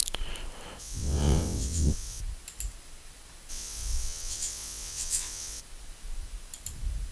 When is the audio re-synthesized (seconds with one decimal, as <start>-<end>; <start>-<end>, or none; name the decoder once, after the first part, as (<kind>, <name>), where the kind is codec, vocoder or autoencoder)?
0.8-2.2 (vocoder, WaveNeXt); 3.5-5.6